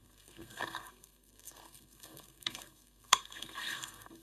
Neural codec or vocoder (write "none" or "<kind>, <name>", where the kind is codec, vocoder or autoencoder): codec, SNAC